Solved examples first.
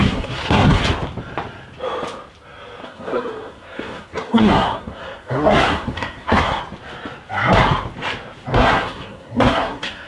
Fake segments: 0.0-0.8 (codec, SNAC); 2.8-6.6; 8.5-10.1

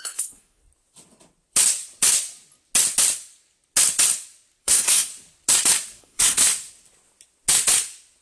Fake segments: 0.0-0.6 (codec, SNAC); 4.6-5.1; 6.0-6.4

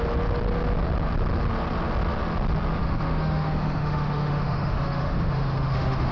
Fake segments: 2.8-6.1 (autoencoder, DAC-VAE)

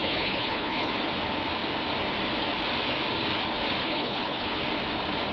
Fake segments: 0.0-0.9 (codec, HILCodec); 3.8-4.6

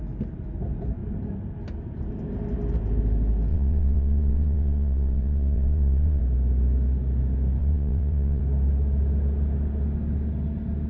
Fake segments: 3.5-6.2 (vocoder, WaveNeXt); 7.6-8.4